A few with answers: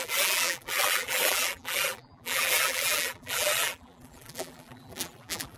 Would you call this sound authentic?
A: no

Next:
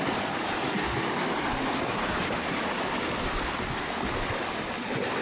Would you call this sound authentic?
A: yes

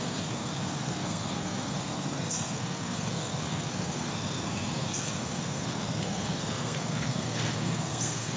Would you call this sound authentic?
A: no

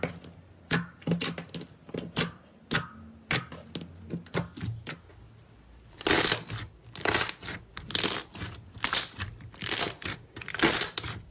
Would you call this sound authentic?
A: yes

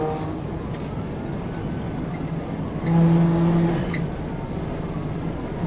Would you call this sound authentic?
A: yes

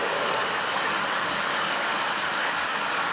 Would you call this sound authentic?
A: no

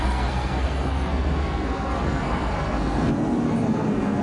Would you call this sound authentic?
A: no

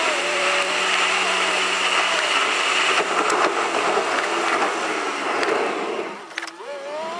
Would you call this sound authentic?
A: yes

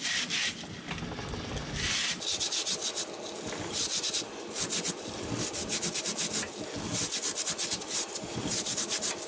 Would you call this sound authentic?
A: yes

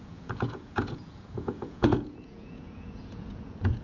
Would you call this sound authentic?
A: no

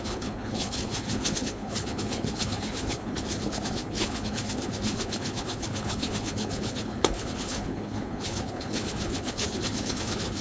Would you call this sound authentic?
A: no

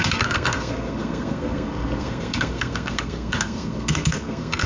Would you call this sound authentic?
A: no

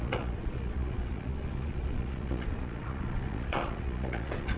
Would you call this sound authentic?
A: no